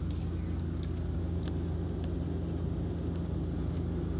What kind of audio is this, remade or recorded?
recorded